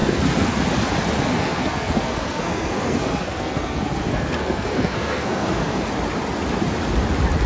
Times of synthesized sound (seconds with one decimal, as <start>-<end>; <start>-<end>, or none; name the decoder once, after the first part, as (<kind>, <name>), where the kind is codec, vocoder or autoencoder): 0.0-0.5 (codec, SNAC); 1.3-5.8